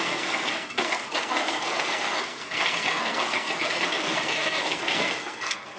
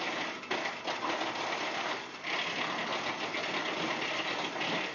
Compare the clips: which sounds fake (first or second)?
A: first